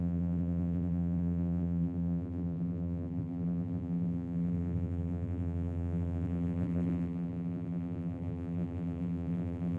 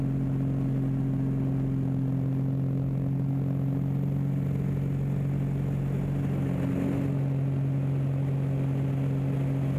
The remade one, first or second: first